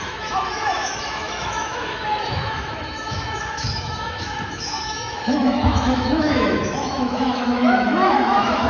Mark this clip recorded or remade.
remade